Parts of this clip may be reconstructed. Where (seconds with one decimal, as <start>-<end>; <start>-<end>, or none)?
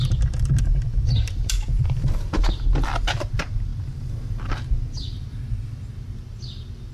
none